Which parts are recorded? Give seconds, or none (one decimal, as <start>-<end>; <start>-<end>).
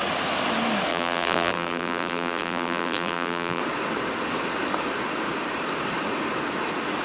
0.0-0.9; 3.6-7.0